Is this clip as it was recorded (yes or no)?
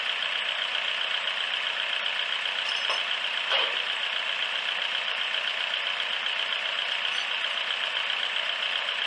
yes